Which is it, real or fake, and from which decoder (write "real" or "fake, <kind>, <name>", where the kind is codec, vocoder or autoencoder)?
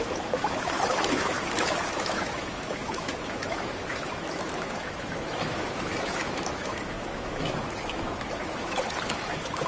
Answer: fake, autoencoder, DAC-VAE